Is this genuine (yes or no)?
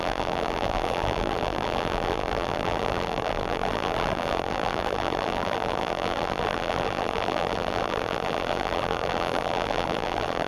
no